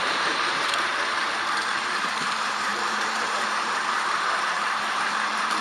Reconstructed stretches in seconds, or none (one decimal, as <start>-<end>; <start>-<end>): 0.0-0.9; 1.7-5.6